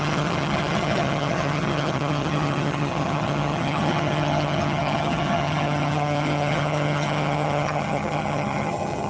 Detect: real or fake fake